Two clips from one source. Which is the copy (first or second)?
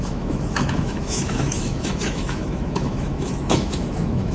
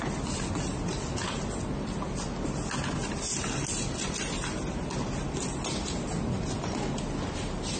first